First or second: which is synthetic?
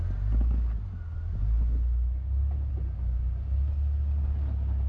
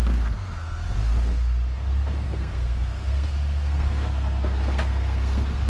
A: second